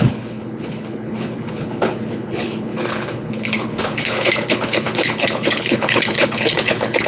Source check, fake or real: fake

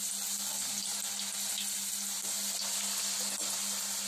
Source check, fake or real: real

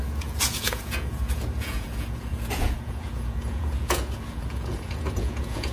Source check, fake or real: fake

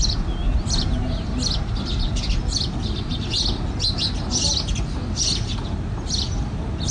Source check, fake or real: real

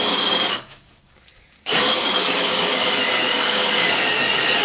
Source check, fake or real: fake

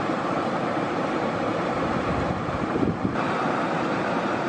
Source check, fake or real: fake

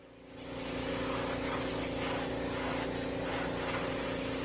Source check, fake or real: real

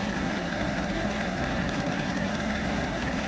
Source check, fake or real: fake